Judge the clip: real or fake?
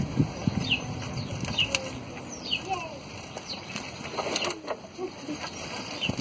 real